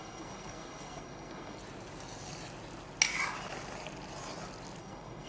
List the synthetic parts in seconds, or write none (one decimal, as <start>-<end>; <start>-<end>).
0.0-1.6; 4.8-5.3